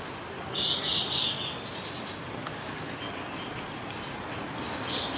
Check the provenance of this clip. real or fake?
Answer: real